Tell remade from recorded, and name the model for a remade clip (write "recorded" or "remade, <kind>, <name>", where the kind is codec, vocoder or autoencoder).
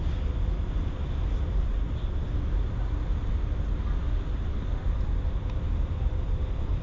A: recorded